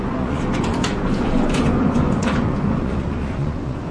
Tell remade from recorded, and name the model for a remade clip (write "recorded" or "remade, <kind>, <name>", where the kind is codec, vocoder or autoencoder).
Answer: remade, vocoder, Vocos